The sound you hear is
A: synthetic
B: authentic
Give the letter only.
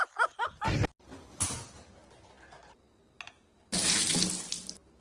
B